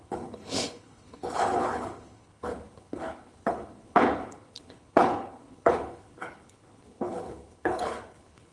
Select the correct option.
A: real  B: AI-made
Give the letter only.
B